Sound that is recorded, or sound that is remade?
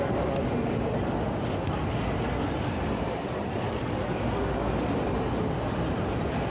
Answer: recorded